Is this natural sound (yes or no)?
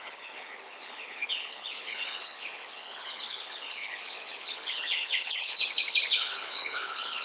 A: no